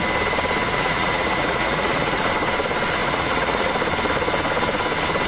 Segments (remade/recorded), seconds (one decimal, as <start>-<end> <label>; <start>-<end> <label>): 0.0-0.6 recorded; 0.6-2.3 remade; 2.3-3.0 recorded; 3.0-3.7 remade; 3.7-5.3 recorded